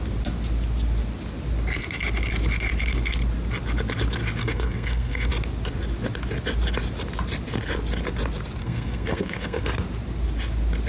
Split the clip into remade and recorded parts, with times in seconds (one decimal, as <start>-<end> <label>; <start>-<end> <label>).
0.0-4.4 recorded; 4.4-5.3 remade; 5.3-8.6 recorded; 8.6-9.6 remade; 9.6-10.9 recorded